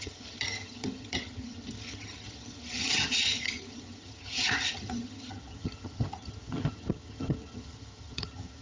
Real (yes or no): no